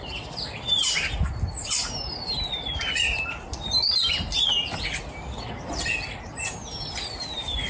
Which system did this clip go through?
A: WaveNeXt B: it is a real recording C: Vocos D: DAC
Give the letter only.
B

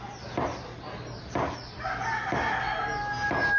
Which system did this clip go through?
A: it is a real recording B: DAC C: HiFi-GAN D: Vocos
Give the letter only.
A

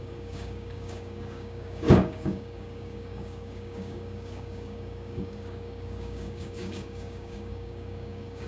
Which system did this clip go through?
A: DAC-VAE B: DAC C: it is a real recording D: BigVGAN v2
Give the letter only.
B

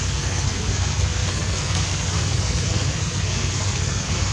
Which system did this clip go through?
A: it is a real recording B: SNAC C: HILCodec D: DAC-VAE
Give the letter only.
B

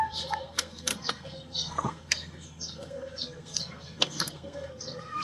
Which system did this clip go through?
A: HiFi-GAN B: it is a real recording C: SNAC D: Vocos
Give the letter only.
C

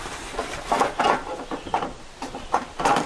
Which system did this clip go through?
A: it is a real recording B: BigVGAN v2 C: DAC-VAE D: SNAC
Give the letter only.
B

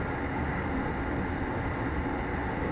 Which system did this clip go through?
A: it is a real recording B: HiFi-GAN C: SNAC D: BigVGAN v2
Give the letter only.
A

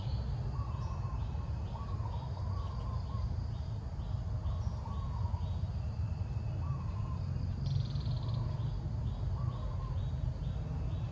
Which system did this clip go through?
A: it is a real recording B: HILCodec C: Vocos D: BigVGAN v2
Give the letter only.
A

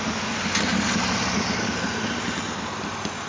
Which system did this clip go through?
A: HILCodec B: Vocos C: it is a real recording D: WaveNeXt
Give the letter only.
C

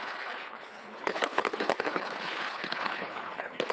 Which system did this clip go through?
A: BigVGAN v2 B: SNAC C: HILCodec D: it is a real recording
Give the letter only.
C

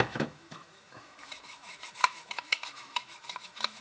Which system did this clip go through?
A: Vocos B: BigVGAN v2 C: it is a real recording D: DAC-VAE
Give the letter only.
D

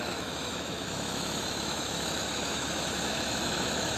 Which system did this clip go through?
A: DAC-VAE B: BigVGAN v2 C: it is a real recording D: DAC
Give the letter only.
A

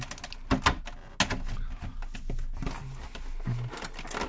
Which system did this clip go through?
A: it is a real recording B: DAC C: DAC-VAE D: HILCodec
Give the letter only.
A